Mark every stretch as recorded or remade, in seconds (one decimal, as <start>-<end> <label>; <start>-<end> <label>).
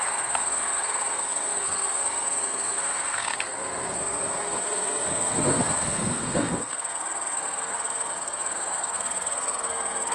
0.0-10.1 remade